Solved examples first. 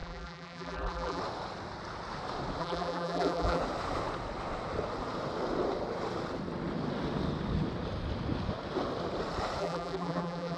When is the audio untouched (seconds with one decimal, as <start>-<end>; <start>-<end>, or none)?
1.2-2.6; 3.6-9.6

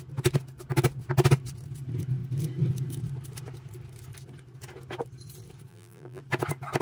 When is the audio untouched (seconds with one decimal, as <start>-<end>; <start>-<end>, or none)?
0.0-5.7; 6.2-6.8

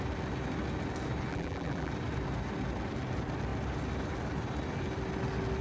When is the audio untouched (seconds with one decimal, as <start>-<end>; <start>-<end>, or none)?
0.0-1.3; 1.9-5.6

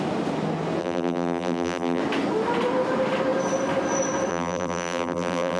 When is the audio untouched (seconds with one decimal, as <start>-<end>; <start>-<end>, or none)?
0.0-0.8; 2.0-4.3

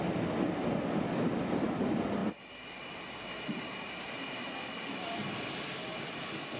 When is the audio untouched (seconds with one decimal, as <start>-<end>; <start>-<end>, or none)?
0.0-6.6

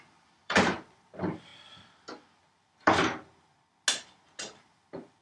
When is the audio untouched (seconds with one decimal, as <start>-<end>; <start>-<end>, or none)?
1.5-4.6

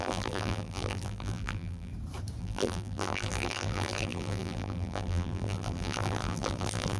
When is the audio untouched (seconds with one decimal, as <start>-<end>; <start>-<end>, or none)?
1.9-2.4

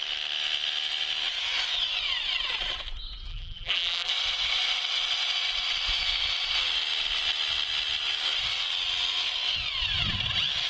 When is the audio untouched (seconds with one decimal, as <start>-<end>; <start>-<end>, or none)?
0.0-3.3; 4.1-10.7